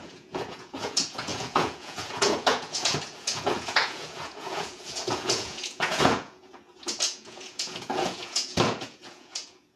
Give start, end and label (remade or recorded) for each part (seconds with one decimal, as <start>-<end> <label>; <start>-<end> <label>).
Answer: 0.0-9.8 remade